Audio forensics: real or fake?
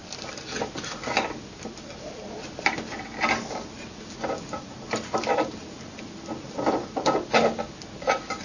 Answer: real